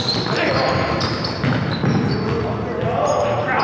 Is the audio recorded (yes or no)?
yes